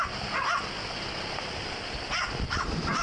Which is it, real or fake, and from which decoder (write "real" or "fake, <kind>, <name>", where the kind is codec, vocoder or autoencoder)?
real